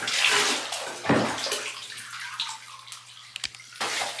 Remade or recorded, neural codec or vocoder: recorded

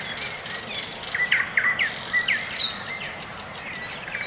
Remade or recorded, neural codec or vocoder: recorded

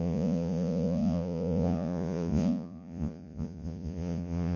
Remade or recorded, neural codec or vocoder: remade, vocoder, Vocos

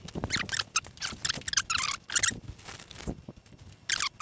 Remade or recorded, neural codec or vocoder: recorded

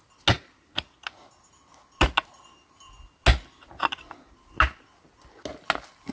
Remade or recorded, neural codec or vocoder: recorded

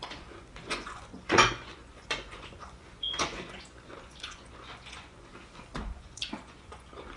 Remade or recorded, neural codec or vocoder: remade, vocoder, Vocos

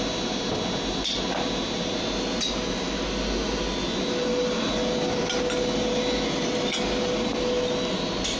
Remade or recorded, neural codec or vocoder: recorded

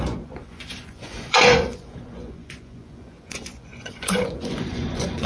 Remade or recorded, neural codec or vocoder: remade, vocoder, Vocos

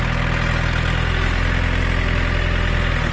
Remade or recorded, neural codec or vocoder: recorded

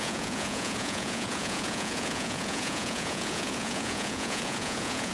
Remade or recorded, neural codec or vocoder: remade, vocoder, Vocos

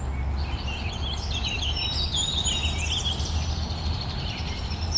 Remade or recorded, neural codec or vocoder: recorded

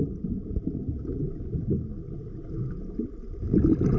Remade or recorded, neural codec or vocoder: recorded